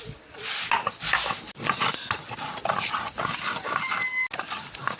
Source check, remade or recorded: recorded